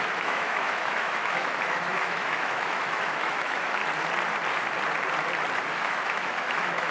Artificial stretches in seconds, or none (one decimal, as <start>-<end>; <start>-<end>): 0.0-3.8; 5.7-6.9